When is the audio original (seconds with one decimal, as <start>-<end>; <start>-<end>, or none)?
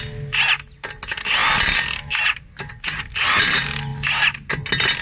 0.0-5.0